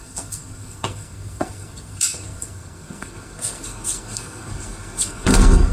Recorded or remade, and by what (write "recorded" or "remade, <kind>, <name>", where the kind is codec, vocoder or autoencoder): remade, codec, SNAC